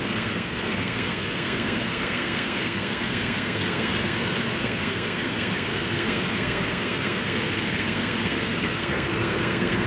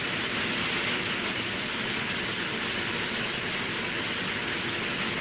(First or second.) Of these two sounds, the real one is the second